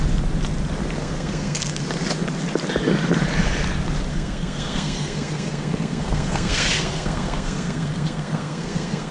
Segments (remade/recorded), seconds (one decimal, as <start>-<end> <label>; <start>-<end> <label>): 0.0-1.0 recorded; 1.0-1.8 remade; 1.8-4.1 recorded; 4.1-9.1 remade